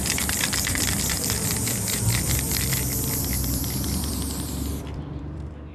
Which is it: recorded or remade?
remade